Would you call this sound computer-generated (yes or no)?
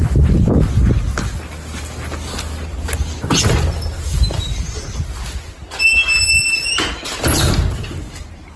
no